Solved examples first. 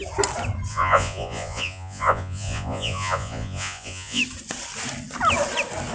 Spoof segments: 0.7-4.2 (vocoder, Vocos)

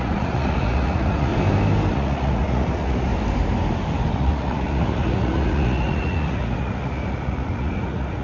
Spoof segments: 0.0-1.3 (vocoder, Vocos); 1.9-3.1; 4.1-8.2

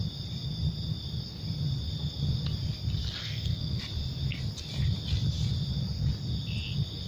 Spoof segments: 3.2-3.8 (codec, SNAC)